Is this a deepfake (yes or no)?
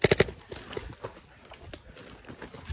no